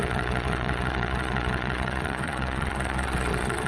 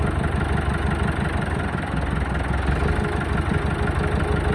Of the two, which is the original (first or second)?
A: second